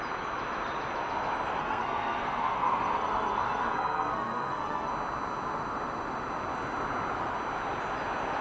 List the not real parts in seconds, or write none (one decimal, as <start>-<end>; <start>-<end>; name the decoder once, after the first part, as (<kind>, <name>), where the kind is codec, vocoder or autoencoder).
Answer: 1.6-4.9 (codec, SNAC)